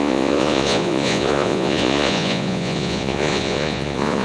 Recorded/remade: remade